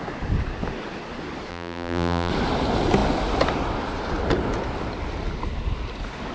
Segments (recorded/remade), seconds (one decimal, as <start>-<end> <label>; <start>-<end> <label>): 0.0-1.5 recorded; 1.5-2.3 remade; 2.3-6.3 recorded